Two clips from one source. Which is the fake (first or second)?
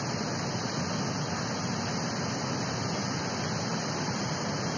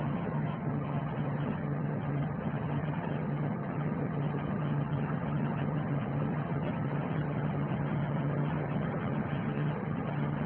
second